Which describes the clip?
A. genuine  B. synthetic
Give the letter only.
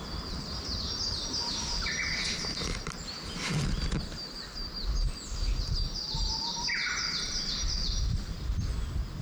A